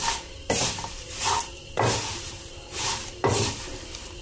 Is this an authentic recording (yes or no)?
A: no